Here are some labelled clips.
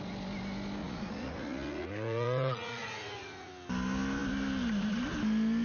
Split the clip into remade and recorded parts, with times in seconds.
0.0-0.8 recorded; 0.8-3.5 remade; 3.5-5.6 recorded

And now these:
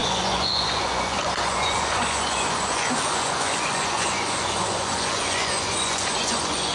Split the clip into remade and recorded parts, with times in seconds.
0.0-6.7 remade

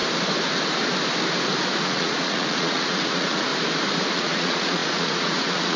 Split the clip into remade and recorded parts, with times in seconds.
0.0-1.8 recorded; 1.8-3.5 remade; 3.5-4.1 recorded; 4.1-5.8 remade

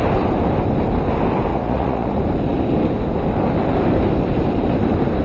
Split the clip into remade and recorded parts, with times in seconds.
0.0-1.5 recorded; 1.5-2.1 remade; 2.1-5.2 recorded